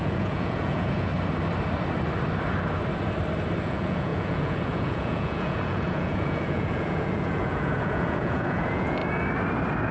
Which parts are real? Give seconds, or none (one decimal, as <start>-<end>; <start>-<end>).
1.1-3.6; 9.0-9.9